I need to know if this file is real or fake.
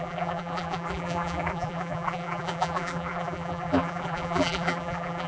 fake